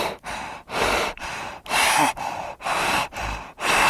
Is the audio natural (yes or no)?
yes